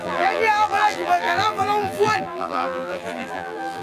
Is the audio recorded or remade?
remade